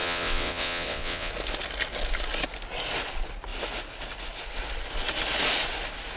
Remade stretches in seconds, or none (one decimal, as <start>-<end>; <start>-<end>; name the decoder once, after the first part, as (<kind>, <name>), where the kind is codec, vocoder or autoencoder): 0.0-1.3 (vocoder, WaveNeXt)